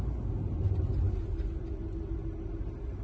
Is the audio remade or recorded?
recorded